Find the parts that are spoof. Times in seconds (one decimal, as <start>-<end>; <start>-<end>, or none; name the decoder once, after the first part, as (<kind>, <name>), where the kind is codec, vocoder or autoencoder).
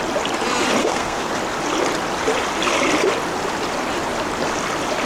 0.8-1.3 (codec, SNAC)